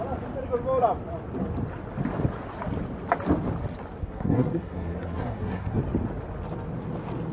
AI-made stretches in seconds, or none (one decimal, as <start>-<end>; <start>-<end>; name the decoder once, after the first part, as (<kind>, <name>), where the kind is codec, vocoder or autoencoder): 4.0-5.8 (codec, SNAC)